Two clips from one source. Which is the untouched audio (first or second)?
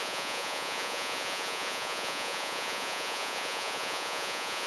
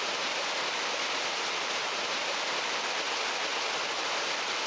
second